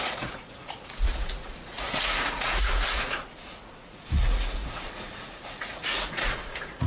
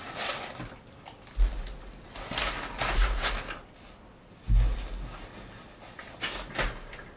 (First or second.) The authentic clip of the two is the second